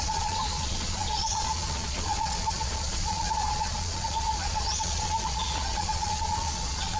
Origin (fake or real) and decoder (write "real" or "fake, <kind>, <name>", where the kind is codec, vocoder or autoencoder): fake, vocoder, Vocos